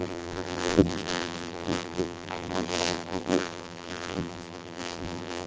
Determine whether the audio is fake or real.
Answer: fake